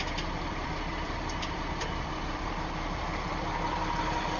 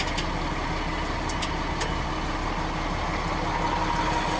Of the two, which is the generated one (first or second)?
first